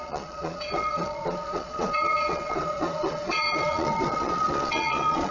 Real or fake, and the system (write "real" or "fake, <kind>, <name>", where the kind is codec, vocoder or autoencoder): fake, vocoder, Vocos